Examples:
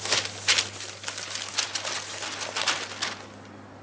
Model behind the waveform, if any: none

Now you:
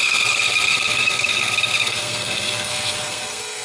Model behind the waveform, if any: codec, SNAC